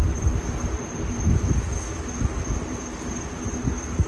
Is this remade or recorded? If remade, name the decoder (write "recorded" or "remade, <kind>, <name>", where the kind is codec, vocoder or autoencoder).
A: recorded